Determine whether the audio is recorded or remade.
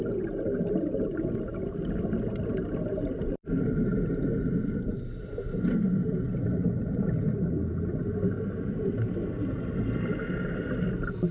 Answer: recorded